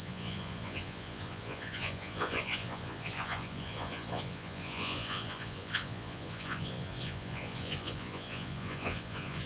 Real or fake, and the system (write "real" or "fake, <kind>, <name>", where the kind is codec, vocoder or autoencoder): fake, vocoder, Vocos